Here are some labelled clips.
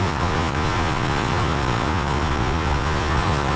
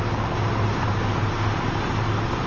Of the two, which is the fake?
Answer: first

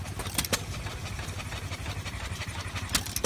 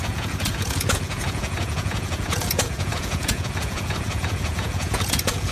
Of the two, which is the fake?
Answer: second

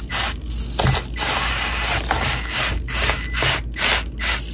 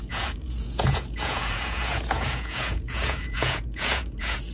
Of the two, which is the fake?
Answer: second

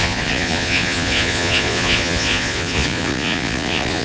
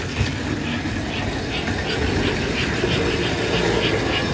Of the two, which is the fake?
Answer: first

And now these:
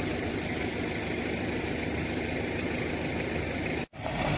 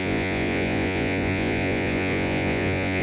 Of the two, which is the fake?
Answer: second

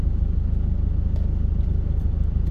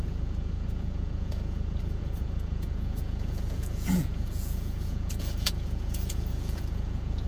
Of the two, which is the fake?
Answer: second